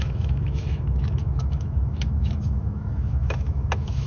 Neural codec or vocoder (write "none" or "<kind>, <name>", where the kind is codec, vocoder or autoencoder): autoencoder, DAC-VAE